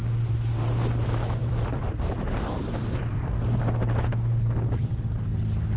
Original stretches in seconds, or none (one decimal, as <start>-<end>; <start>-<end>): 0.0-1.4; 3.4-5.8